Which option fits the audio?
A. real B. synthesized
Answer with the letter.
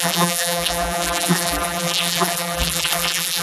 B